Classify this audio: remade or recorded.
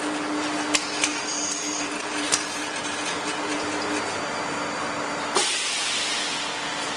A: recorded